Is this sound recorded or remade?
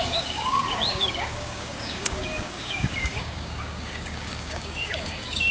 remade